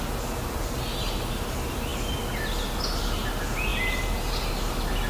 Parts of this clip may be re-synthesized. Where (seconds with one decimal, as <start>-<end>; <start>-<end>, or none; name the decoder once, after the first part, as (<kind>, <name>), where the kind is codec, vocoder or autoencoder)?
none